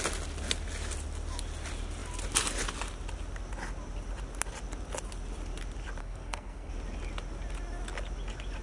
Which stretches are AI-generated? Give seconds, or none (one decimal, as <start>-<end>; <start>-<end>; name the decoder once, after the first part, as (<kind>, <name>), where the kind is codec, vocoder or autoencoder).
6.0-6.7 (codec, SNAC)